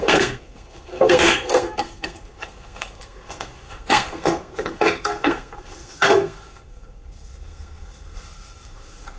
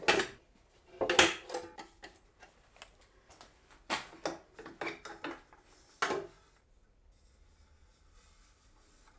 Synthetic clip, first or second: first